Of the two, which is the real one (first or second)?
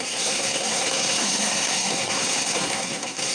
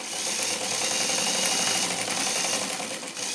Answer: second